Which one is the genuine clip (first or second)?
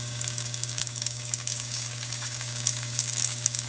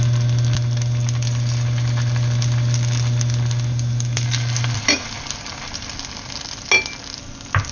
second